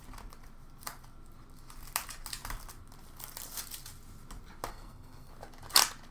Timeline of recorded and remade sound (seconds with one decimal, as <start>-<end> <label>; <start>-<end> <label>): 0.0-4.7 recorded; 4.7-5.3 remade; 5.3-6.1 recorded